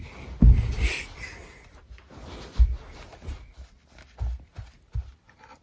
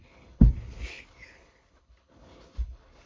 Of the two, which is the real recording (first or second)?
first